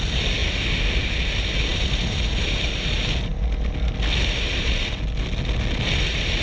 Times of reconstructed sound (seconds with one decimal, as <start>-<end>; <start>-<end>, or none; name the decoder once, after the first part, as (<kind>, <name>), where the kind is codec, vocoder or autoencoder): none